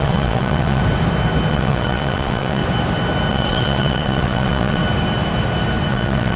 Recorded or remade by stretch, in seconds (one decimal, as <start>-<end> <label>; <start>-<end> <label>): 0.0-0.8 remade; 0.8-1.5 recorded; 1.5-2.6 remade; 2.6-3.3 recorded; 3.3-4.8 remade; 4.8-5.9 recorded; 5.9-6.4 remade